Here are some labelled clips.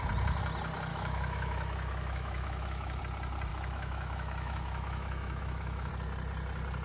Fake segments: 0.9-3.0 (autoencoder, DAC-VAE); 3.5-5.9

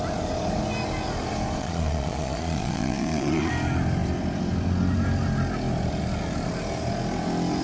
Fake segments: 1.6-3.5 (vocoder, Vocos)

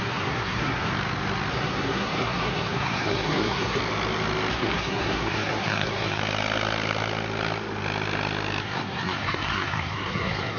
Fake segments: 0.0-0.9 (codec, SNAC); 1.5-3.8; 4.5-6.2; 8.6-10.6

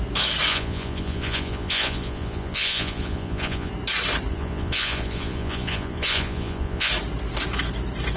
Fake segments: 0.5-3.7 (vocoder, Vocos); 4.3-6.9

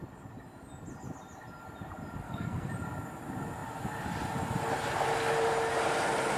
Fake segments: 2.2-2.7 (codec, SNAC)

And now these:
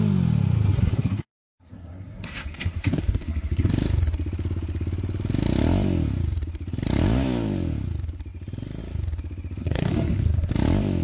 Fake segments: 0.7-3.7 (codec, SNAC); 9.6-10.5

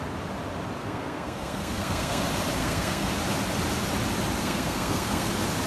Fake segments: 0.8-2.2 (codec, SNAC); 2.6-3.1; 4.4-5.3

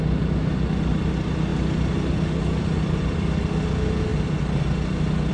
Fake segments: 1.5-3.4 (vocoder, BigVGAN v2)